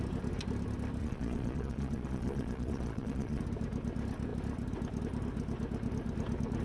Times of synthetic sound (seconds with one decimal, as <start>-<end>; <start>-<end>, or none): 1.0-3.4